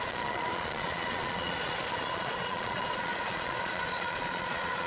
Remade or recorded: remade